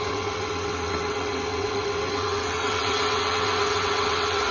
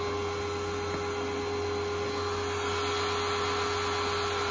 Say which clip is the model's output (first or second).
first